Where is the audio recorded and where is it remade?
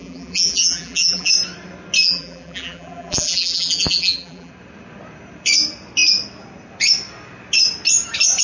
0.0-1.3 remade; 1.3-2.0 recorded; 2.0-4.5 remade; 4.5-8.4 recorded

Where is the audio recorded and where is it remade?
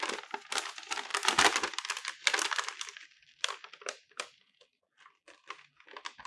0.0-1.1 recorded; 1.1-4.8 remade; 4.8-6.3 recorded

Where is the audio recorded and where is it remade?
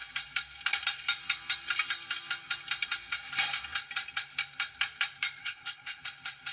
0.0-5.4 recorded; 5.4-6.0 remade; 6.0-6.5 recorded